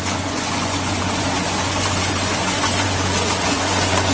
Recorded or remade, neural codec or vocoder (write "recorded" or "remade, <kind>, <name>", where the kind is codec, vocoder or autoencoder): remade, vocoder, Vocos